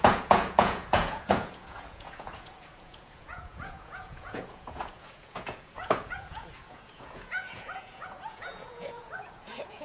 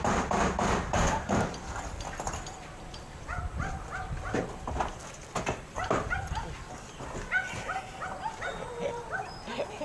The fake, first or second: first